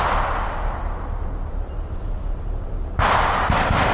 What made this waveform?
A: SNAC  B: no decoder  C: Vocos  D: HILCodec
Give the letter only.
B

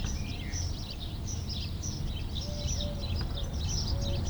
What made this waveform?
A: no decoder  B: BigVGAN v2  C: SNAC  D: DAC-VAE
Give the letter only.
A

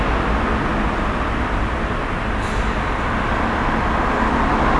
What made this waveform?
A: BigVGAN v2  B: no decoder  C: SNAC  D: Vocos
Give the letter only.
B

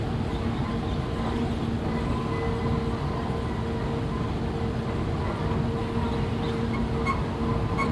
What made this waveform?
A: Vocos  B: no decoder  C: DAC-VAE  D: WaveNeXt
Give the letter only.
B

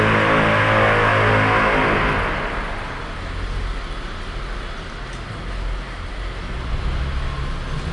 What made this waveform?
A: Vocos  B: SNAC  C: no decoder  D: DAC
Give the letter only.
C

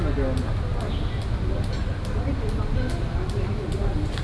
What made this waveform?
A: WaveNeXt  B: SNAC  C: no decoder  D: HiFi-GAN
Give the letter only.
C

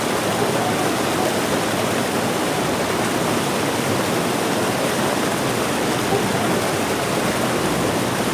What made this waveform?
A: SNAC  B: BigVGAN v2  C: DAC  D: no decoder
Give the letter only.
D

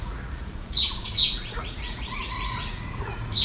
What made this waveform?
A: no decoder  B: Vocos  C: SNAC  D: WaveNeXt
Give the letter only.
B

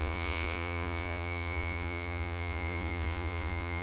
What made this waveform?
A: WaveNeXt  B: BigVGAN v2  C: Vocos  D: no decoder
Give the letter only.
C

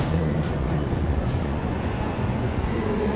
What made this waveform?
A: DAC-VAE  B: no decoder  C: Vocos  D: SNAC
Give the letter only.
C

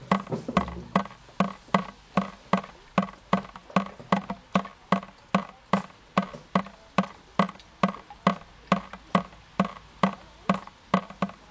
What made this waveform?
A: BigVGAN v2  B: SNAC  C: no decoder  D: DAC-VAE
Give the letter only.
C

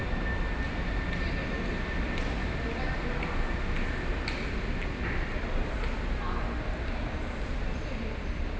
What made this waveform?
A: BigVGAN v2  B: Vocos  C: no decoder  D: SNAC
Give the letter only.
C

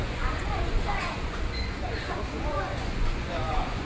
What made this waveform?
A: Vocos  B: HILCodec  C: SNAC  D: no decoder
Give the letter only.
A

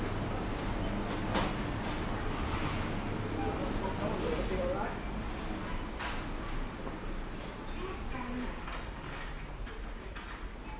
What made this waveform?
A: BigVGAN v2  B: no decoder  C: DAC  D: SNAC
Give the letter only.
B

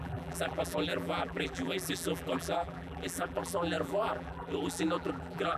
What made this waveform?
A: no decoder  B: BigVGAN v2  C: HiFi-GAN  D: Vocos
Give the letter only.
B